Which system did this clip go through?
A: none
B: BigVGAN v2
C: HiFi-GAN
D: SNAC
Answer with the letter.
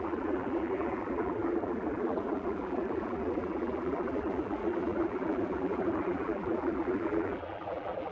B